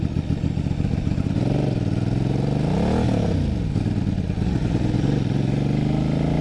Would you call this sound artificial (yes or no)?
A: no